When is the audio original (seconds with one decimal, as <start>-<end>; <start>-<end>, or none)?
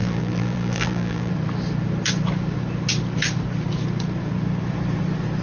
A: 1.3-5.4